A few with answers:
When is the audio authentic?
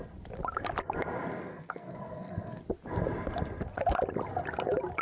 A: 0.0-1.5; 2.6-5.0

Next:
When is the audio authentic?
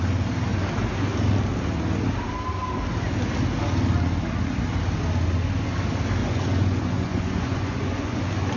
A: 0.0-6.2; 8.2-8.6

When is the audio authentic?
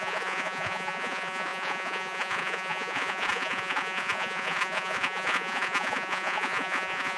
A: none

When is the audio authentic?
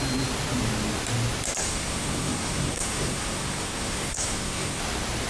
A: 0.0-1.6; 4.8-5.3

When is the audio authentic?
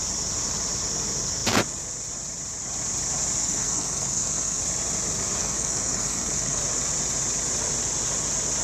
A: 0.0-3.4; 4.6-5.4; 6.6-8.6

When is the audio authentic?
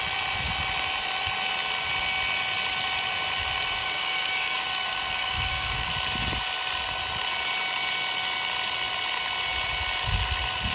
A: 0.0-3.8; 5.9-10.7